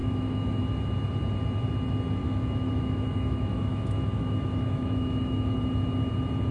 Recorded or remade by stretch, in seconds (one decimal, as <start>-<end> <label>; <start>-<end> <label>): 0.0-0.6 remade; 0.6-2.2 recorded; 2.2-5.6 remade; 5.6-6.5 recorded